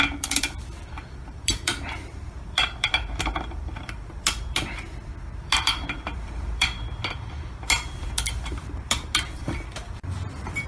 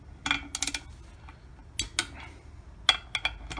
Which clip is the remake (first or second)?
first